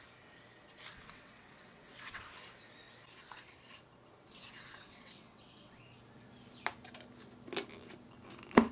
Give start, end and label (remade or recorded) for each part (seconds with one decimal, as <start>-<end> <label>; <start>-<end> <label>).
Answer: 0.0-0.9 recorded; 0.9-2.2 remade; 2.2-4.3 recorded; 4.3-5.8 remade; 5.8-8.7 recorded